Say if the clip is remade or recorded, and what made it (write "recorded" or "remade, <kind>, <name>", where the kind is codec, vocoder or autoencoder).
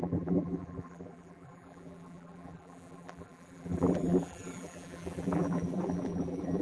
remade, vocoder, BigVGAN v2